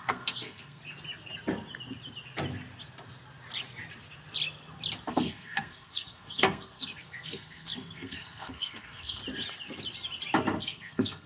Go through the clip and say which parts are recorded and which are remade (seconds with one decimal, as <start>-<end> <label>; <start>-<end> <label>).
0.0-0.8 remade; 0.8-5.1 recorded; 5.1-9.2 remade; 9.2-10.6 recorded; 10.6-11.3 remade